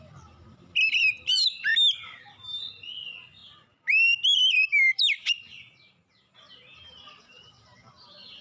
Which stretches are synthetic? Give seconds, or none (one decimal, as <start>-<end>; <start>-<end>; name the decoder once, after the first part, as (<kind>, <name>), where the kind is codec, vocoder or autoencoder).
0.0-1.7 (vocoder, BigVGAN v2); 2.7-8.4